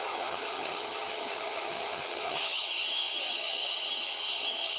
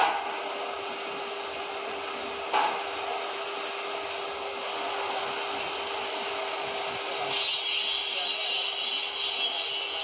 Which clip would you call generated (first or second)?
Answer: first